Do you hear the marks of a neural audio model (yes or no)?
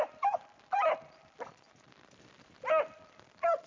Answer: no